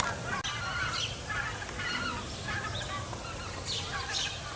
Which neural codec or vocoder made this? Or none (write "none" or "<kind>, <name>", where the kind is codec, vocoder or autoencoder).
none